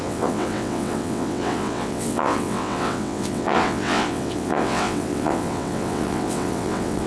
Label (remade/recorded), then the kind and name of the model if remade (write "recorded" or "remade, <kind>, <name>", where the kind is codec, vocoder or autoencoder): remade, vocoder, WaveNeXt